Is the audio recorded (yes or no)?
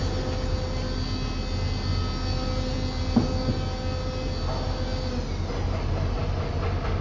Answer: yes